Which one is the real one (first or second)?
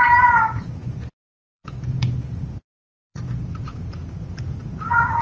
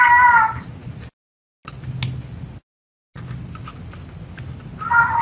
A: second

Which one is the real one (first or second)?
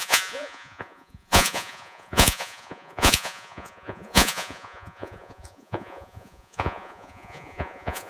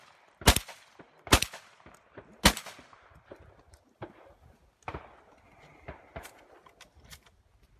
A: second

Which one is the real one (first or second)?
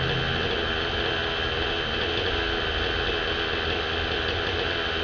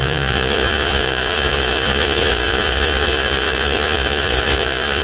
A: first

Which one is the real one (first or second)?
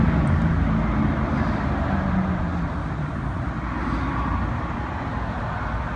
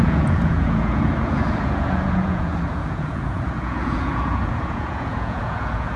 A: first